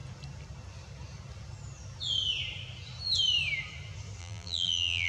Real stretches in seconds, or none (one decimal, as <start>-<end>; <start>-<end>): 0.0-4.2